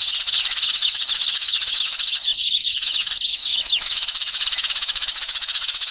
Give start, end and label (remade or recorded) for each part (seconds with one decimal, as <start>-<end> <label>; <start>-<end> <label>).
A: 0.0-5.9 remade